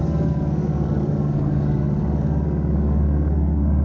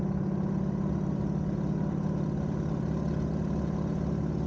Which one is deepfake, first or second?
first